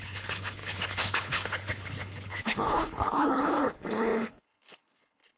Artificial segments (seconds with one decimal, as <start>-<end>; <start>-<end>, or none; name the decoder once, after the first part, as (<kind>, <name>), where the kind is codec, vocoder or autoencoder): 0.0-5.4 (codec, HILCodec)